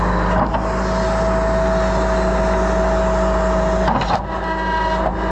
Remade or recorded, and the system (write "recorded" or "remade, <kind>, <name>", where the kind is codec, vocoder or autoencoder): recorded